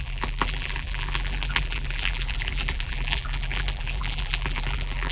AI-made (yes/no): yes